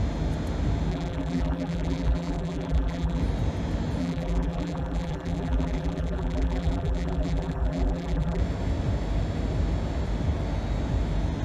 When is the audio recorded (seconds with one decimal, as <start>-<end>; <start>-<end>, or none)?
0.0-0.9; 3.2-4.0; 8.4-11.4